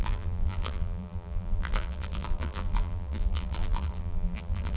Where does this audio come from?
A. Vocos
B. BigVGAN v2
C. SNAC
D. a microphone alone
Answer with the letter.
B